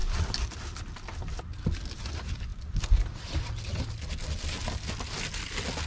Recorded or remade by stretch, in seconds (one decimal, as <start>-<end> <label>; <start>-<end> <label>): 0.0-5.9 recorded